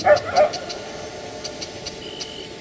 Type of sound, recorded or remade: recorded